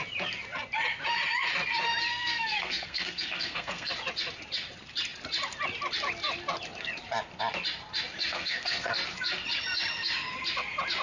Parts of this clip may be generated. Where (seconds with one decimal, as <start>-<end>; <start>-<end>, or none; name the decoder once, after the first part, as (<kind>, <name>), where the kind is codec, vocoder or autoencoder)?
2.1-3.9 (codec, SNAC); 8.3-8.9